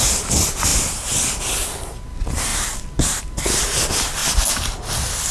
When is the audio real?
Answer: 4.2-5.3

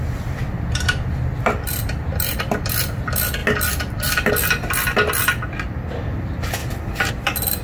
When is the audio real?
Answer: 0.0-6.6; 7.1-7.6

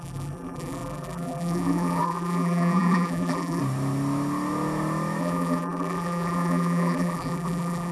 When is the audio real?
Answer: 3.6-5.2